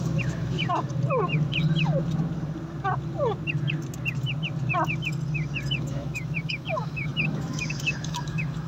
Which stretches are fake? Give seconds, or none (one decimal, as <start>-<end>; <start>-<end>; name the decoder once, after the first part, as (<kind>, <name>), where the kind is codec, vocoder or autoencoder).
0.0-0.6 (autoencoder, DAC-VAE); 5.8-8.7